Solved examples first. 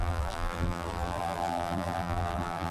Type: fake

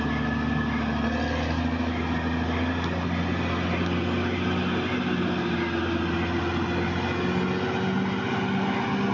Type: real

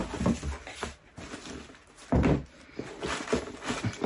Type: real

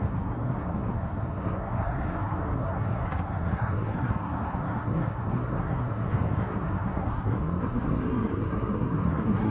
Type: fake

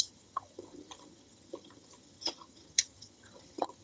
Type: fake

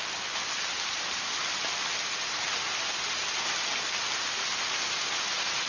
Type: real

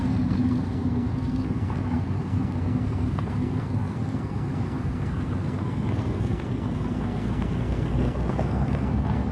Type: fake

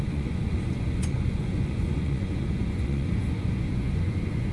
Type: fake